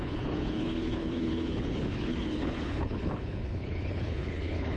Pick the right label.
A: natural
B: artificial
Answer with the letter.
B